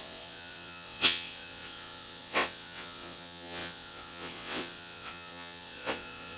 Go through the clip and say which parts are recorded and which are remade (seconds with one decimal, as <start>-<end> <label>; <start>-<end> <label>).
0.0-6.4 remade